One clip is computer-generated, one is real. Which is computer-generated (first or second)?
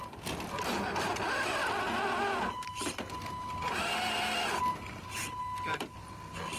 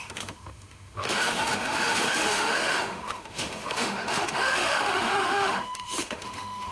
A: second